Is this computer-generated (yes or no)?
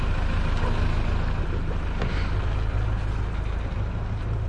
no